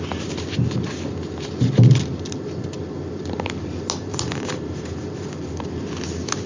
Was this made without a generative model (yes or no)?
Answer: yes